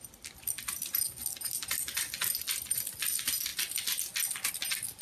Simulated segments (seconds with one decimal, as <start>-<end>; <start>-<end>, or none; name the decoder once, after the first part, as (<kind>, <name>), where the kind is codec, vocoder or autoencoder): none